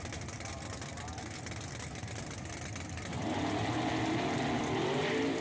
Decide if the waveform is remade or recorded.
recorded